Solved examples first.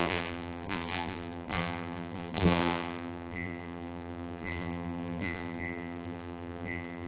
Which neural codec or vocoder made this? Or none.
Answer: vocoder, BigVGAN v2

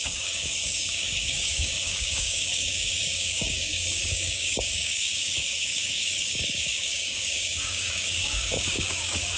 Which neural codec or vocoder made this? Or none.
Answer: codec, DAC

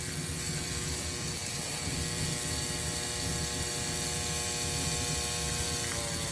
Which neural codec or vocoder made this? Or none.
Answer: none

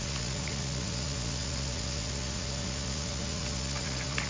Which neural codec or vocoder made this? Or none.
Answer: vocoder, Vocos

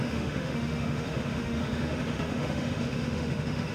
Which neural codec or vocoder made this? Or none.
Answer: autoencoder, DAC-VAE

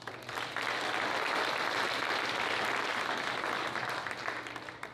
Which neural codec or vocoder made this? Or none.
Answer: none